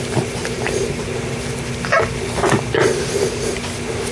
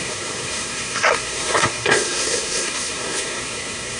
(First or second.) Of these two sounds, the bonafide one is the first